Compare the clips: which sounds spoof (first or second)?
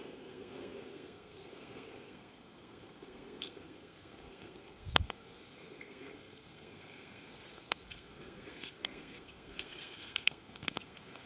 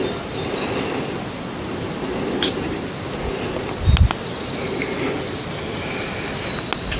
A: first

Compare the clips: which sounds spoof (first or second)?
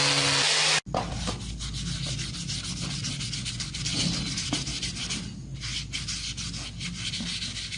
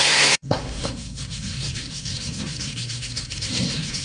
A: second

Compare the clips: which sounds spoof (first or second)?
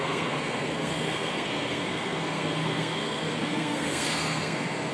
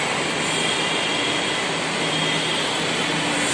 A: first